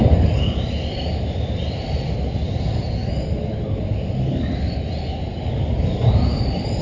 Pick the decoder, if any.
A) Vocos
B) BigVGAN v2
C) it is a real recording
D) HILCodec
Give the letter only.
C